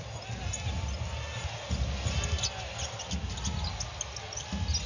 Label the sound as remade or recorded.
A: recorded